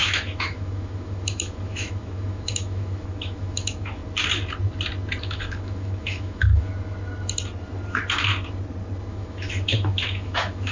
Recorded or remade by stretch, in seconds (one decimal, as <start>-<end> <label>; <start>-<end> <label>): 0.0-4.0 remade; 4.0-5.2 recorded; 5.2-6.7 remade; 6.7-9.1 recorded; 9.1-10.7 remade